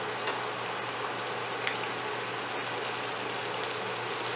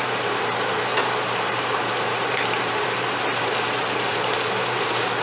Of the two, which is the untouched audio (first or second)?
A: first